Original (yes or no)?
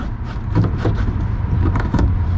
yes